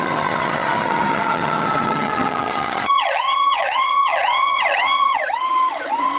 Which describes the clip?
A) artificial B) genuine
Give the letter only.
A